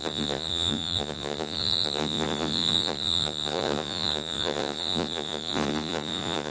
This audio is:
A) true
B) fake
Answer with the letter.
B